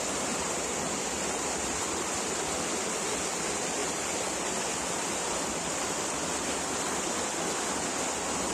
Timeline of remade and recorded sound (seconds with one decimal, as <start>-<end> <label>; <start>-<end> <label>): 0.0-3.8 recorded; 3.8-4.3 remade; 4.3-4.7 recorded; 4.7-7.6 remade; 7.6-8.5 recorded